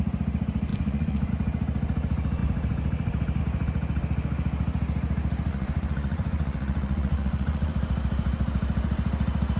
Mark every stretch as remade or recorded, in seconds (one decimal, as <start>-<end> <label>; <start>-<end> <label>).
0.0-0.7 recorded; 0.7-1.3 remade; 1.3-5.5 recorded; 5.5-7.7 remade; 7.7-9.6 recorded